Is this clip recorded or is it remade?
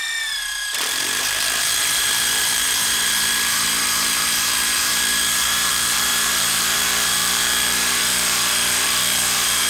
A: remade